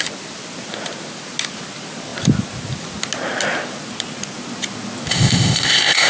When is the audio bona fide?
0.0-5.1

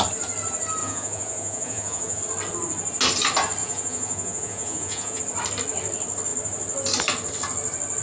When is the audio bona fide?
0.0-0.8; 2.2-3.6; 5.2-8.0